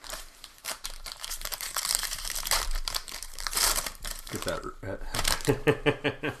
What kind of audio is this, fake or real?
fake